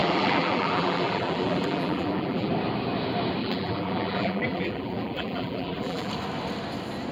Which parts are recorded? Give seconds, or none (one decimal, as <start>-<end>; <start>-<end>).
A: 2.5-3.4; 6.1-7.1